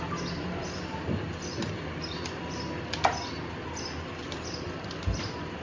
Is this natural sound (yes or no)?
yes